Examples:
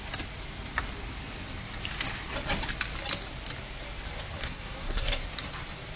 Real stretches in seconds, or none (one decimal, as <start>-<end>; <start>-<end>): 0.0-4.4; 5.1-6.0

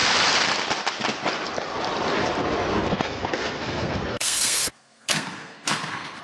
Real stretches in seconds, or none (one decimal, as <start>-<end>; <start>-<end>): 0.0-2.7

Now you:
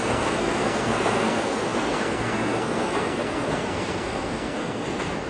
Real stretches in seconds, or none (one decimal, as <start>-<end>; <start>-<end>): none